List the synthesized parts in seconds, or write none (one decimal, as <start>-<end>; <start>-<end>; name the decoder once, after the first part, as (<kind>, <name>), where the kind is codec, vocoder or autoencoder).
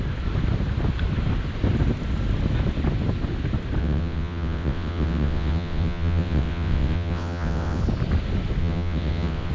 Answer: 3.8-7.8 (vocoder, WaveNeXt); 8.6-9.5